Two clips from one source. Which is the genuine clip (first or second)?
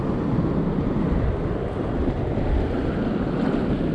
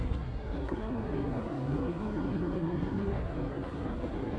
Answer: first